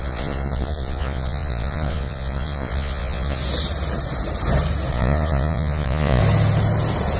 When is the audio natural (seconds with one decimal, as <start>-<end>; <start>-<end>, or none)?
3.4-4.9; 6.2-7.2